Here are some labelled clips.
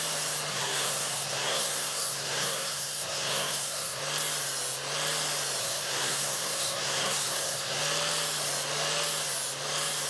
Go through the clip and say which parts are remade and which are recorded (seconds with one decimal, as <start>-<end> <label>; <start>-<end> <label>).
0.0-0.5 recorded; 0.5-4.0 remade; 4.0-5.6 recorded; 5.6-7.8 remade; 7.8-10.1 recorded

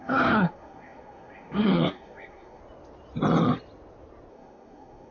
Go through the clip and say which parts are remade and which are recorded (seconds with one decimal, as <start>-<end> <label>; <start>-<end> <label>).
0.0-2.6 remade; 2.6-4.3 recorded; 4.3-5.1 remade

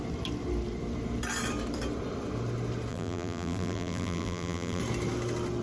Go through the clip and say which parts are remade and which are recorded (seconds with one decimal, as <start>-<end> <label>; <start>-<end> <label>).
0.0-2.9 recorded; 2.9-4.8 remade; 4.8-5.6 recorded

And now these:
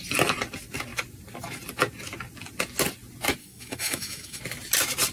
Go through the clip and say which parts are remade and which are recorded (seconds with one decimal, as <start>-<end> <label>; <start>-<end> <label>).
0.0-3.4 recorded; 3.4-4.4 remade; 4.4-5.1 recorded

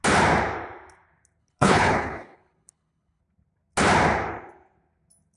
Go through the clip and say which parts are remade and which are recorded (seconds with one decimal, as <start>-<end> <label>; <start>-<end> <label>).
0.0-1.4 recorded; 1.4-3.2 remade; 3.2-5.4 recorded